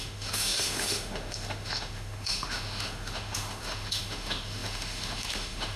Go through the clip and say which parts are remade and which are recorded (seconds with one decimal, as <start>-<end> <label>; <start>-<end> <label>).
0.0-5.8 remade